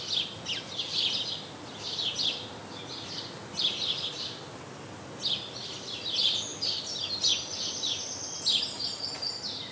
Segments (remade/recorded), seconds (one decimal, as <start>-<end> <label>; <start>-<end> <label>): 0.0-9.7 recorded